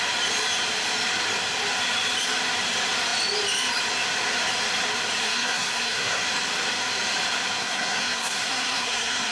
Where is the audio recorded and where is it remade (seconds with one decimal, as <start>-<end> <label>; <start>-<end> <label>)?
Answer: 0.0-5.2 recorded; 5.2-6.2 remade; 6.2-7.6 recorded; 7.6-9.3 remade